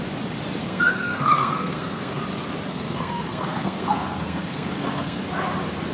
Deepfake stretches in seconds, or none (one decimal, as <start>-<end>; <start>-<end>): 0.6-2.2; 2.7-5.2